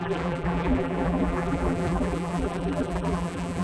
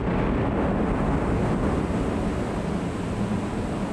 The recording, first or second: second